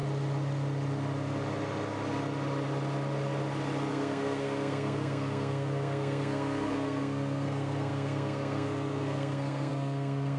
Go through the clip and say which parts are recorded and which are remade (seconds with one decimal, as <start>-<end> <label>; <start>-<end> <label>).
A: 0.0-3.9 recorded; 3.9-10.4 remade